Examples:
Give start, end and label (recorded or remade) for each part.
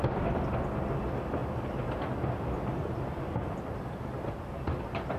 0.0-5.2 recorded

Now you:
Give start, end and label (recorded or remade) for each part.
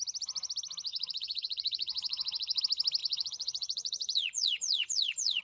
0.0-0.9 recorded; 0.9-2.6 remade; 2.6-3.0 recorded; 3.0-5.4 remade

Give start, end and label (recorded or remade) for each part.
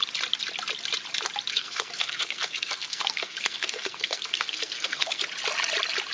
0.0-1.5 recorded; 1.5-5.2 remade; 5.2-6.1 recorded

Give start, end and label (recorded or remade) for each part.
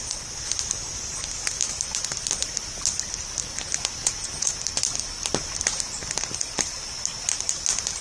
0.0-4.0 recorded; 4.0-4.6 remade; 4.6-8.0 recorded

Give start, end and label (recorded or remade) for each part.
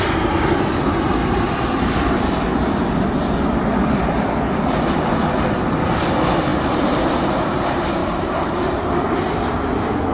0.0-6.5 recorded; 6.5-7.6 remade; 7.6-8.0 recorded; 8.0-8.8 remade; 8.8-10.1 recorded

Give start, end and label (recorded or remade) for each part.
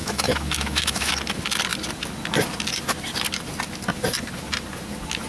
0.0-1.1 remade; 1.1-5.3 recorded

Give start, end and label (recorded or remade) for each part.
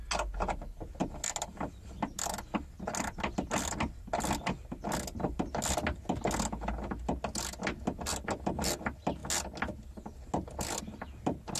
0.0-11.6 recorded